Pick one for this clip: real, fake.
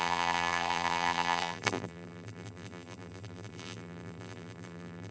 fake